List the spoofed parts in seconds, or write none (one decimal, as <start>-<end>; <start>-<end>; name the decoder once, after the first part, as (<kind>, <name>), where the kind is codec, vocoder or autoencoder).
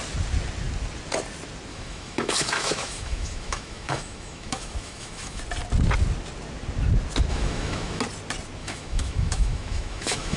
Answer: 1.7-5.4 (autoencoder, DAC-VAE); 7.3-8.0; 8.6-10.4